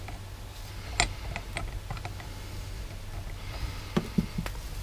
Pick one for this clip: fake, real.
real